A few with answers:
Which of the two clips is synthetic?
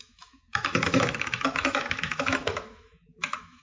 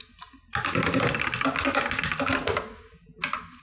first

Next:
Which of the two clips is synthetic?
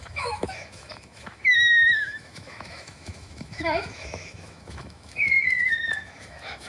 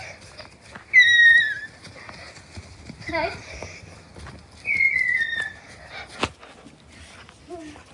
first